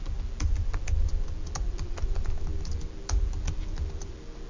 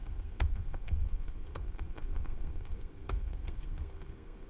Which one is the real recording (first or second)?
first